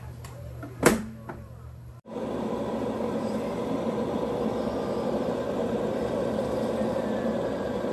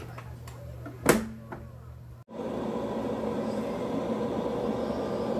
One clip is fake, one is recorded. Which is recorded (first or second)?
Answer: second